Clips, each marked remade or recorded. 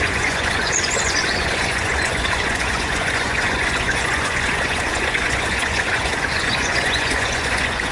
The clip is remade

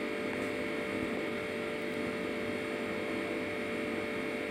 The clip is recorded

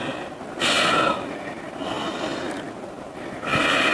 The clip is recorded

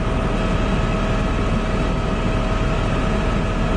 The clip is recorded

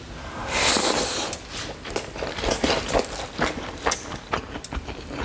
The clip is recorded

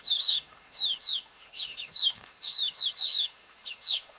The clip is remade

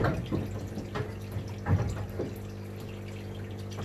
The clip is recorded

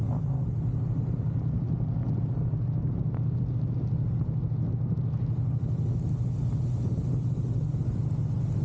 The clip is recorded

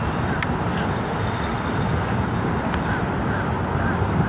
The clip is recorded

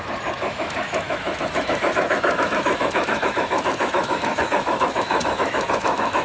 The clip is remade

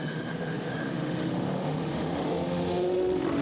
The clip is remade